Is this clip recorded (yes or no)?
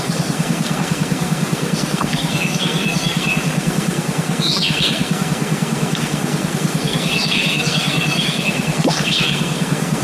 no